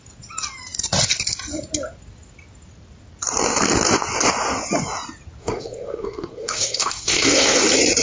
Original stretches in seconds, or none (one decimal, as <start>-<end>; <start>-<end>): 0.0-5.4; 7.6-8.0